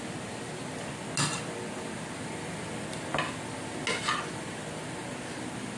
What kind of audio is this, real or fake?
real